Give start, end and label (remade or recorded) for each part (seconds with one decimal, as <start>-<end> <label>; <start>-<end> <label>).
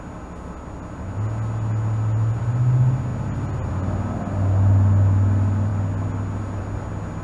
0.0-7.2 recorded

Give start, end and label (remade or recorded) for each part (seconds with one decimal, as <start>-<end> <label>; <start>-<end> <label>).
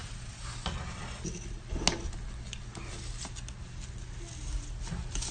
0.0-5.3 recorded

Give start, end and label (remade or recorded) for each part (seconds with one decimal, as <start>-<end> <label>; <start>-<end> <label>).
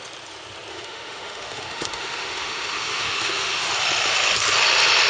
0.0-0.7 recorded; 0.7-3.7 remade; 3.7-5.1 recorded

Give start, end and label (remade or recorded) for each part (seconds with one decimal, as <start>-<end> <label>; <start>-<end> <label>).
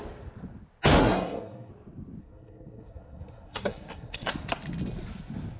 0.0-1.0 recorded; 1.0-1.7 remade; 1.7-2.2 recorded; 2.2-4.3 remade; 4.3-5.6 recorded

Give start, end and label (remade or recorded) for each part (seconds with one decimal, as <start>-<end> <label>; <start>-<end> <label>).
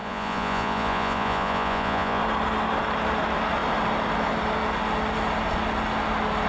0.0-2.2 remade; 2.2-6.5 recorded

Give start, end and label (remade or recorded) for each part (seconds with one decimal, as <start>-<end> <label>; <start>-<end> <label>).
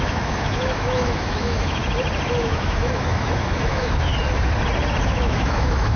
0.0-1.8 remade; 1.8-2.3 recorded; 2.3-4.1 remade; 4.1-5.0 recorded; 5.0-6.0 remade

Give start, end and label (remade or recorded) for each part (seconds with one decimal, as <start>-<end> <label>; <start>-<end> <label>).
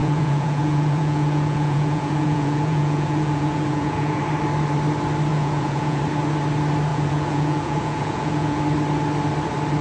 0.0-4.2 remade; 4.2-5.3 recorded; 5.3-6.0 remade; 6.0-6.9 recorded; 6.9-8.6 remade; 8.6-9.8 recorded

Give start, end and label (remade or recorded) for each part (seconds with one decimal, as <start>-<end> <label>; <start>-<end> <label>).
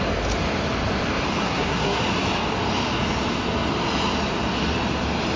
0.0-1.4 recorded; 1.4-2.0 remade; 2.0-5.4 recorded